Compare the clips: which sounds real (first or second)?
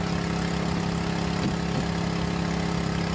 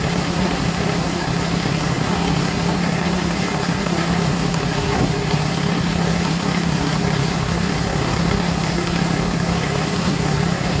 first